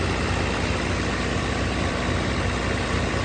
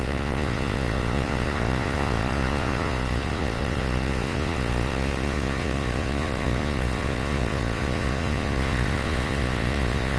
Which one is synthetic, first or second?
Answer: second